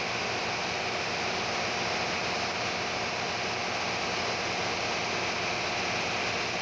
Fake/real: real